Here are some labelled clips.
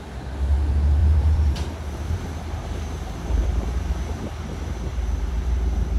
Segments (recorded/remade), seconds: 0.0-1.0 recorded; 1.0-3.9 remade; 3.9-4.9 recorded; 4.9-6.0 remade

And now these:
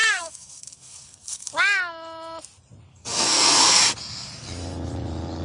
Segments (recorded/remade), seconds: 0.0-1.5 remade; 1.5-2.9 recorded; 2.9-3.8 remade; 3.8-5.4 recorded

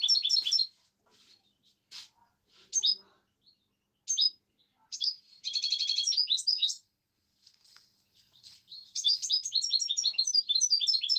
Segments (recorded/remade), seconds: 0.0-4.9 recorded; 4.9-5.4 remade; 5.4-6.5 recorded; 6.5-9.3 remade; 9.3-11.2 recorded

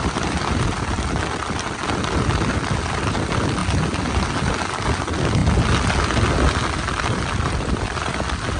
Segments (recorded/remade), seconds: 0.0-3.6 remade; 3.6-4.5 recorded; 4.5-5.4 remade; 5.4-6.7 recorded; 6.7-8.6 remade

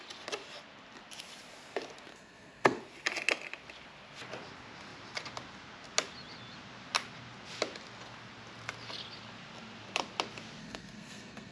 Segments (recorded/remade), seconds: 0.0-2.1 recorded; 2.1-2.8 remade; 2.8-10.6 recorded; 10.6-11.5 remade

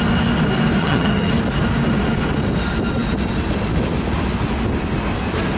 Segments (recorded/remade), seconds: 0.0-0.8 recorded; 0.8-1.3 remade; 1.3-5.6 recorded

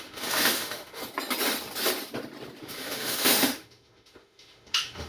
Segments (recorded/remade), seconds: 0.0-1.0 remade; 1.0-2.6 recorded; 2.6-5.1 remade

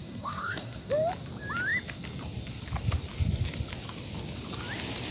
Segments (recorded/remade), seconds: 0.0-0.9 remade; 0.9-5.1 recorded